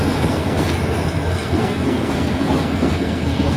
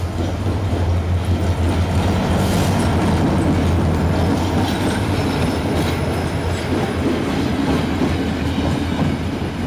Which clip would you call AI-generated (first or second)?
first